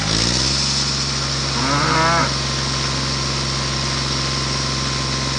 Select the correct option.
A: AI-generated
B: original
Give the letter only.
B